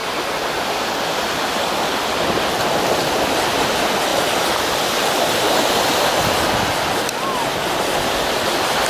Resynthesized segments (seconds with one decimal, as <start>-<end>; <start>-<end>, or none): none